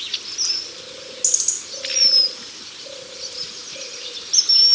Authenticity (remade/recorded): recorded